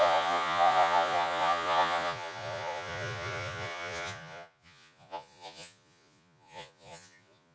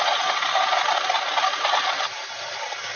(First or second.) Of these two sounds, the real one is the second